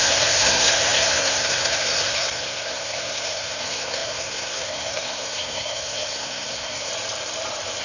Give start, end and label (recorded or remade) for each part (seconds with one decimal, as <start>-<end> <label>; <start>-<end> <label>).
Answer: 0.0-6.9 remade; 6.9-7.8 recorded